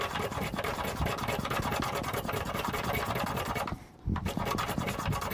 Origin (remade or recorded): recorded